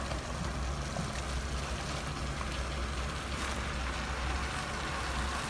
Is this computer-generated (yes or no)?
no